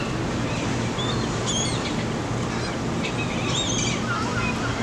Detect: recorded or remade recorded